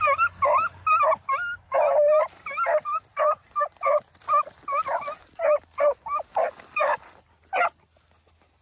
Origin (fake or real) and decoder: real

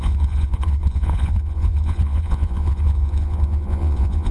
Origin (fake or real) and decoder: fake, vocoder, Vocos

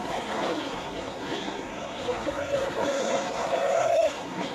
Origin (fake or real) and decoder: fake, codec, SNAC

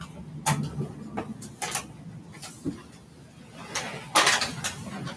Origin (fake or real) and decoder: real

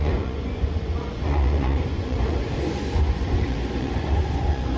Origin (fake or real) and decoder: fake, vocoder, Vocos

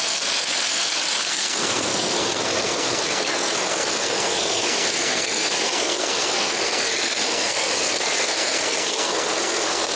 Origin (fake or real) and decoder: fake, codec, SNAC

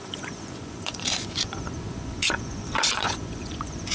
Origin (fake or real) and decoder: fake, vocoder, Vocos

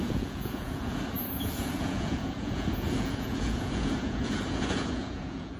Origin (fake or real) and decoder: fake, vocoder, Vocos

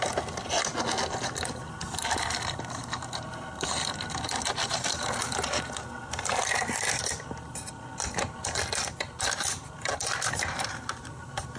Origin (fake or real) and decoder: real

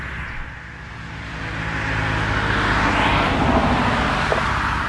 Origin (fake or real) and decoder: real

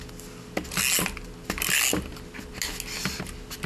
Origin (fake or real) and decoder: real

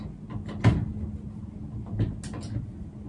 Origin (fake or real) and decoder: real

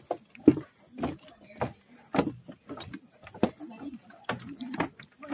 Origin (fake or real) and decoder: real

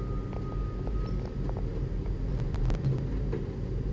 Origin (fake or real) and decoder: real